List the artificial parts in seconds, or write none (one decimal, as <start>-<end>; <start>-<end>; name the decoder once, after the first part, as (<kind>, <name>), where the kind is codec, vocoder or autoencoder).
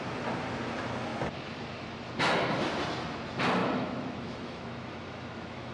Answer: 3.6-5.7 (autoencoder, DAC-VAE)